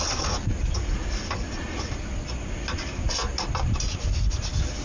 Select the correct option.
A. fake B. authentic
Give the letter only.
B